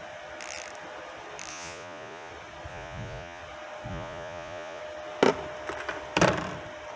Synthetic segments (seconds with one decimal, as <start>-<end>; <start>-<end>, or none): 1.5-2.3; 2.7-3.4; 3.9-4.8